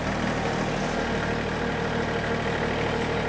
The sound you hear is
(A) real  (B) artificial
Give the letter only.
A